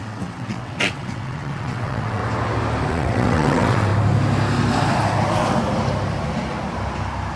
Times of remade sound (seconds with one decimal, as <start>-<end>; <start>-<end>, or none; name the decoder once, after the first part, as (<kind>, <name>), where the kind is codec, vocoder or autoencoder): 0.0-2.2 (vocoder, WaveNeXt); 2.9-3.9